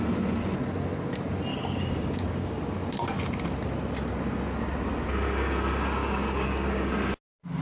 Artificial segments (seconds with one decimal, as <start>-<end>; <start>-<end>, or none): 1.5-2.6; 6.0-6.9